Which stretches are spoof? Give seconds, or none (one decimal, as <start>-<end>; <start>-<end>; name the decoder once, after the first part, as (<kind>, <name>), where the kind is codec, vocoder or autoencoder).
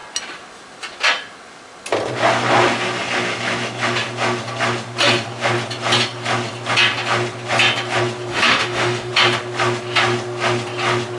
8.3-9.1 (autoencoder, DAC-VAE)